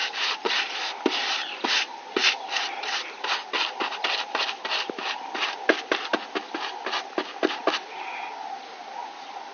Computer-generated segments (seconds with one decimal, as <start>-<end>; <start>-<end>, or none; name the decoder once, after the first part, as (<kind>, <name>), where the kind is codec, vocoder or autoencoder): 0.0-0.5 (vocoder, BigVGAN v2)